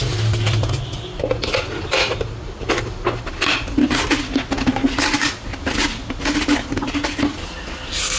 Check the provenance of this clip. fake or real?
real